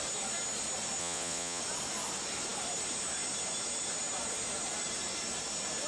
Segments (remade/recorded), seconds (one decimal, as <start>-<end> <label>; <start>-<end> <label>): 0.0-1.0 recorded; 1.0-1.6 remade; 1.6-5.9 recorded